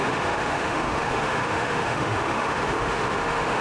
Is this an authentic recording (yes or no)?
no